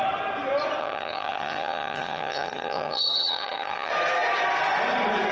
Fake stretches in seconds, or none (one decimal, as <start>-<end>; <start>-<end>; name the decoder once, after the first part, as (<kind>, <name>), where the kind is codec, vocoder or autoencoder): 0.8-3.9 (vocoder, HiFi-GAN)